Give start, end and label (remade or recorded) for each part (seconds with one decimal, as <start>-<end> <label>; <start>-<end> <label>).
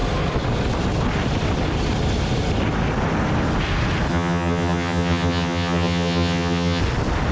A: 0.0-4.1 recorded; 4.1-6.8 remade; 6.8-7.3 recorded